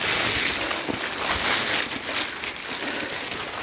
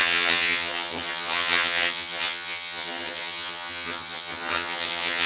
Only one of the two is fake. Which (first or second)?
second